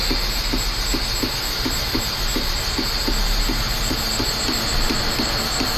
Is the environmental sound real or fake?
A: real